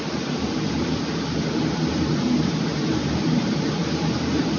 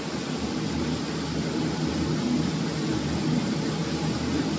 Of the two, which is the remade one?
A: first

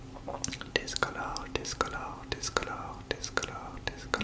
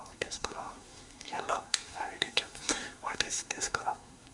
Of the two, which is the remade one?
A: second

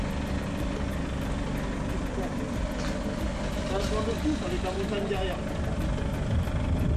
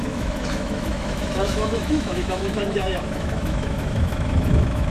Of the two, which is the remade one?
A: second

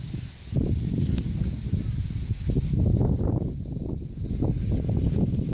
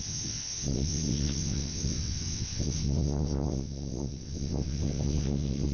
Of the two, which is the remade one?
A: second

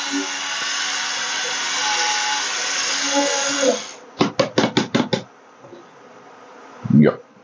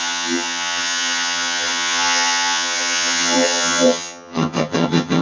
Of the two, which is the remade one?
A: second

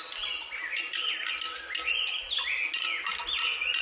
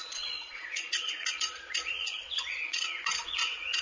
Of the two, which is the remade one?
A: second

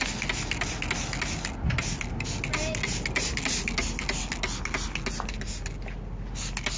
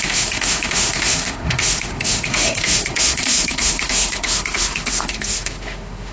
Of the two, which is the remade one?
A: second